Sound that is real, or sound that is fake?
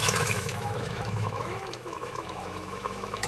fake